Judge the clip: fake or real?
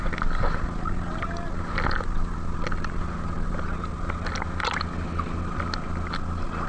real